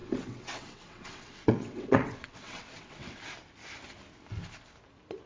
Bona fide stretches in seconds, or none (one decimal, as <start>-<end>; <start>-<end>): 3.2-5.3